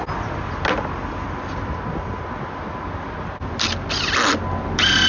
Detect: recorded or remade recorded